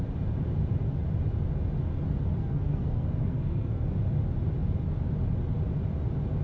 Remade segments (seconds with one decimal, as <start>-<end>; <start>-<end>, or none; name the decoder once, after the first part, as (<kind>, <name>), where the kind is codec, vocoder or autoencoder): 2.4-3.9 (codec, SNAC)